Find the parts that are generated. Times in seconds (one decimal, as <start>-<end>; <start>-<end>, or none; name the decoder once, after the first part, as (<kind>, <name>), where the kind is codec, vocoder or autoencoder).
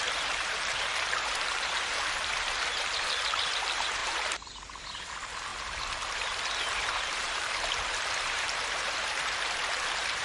0.0-5.5 (vocoder, BigVGAN v2); 7.0-10.2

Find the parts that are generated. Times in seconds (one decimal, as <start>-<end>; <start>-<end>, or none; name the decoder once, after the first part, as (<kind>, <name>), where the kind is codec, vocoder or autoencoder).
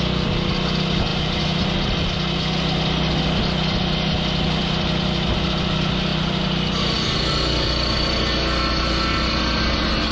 none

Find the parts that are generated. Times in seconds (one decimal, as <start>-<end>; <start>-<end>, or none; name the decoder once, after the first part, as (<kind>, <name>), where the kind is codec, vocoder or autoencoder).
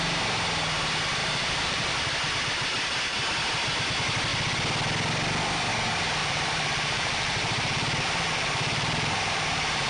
1.2-2.1 (vocoder, BigVGAN v2); 6.2-9.9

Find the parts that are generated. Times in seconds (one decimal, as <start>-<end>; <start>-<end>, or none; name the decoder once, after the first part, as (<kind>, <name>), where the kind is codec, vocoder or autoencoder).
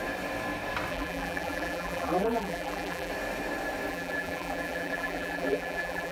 0.9-3.1 (vocoder, BigVGAN v2); 3.9-6.1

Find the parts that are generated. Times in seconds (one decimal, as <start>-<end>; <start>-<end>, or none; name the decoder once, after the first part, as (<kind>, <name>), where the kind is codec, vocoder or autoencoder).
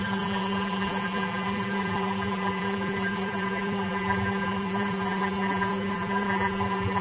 0.0-7.0 (vocoder, BigVGAN v2)